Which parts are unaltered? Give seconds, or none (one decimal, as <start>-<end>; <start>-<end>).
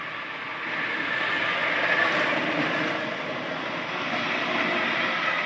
0.0-5.5